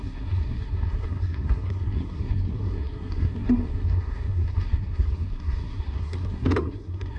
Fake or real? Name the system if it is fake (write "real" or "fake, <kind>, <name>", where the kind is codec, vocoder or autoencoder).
fake, codec, SNAC